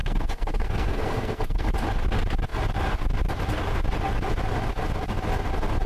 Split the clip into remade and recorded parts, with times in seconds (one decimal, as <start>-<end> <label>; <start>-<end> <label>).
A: 0.0-1.7 remade; 1.7-5.9 recorded